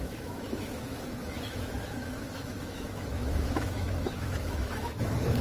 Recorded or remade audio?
remade